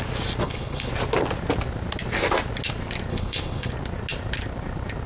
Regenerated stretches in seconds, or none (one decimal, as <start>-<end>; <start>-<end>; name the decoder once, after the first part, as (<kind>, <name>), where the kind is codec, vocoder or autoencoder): 0.4-0.9 (codec, HILCodec); 3.1-3.7